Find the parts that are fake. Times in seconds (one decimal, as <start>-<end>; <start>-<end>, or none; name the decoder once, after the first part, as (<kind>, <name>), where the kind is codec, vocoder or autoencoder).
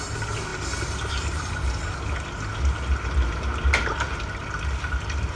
0.5-1.1 (vocoder, BigVGAN v2)